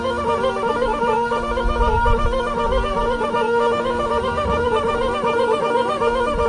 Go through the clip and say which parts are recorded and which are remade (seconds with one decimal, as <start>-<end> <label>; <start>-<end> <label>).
0.0-6.5 recorded